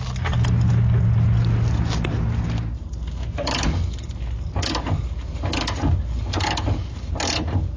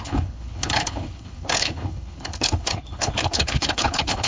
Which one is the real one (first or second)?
first